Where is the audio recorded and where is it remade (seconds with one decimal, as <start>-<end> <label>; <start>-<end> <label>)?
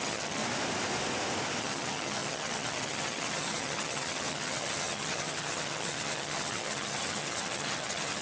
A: 0.0-0.4 remade; 0.4-1.6 recorded; 1.6-8.2 remade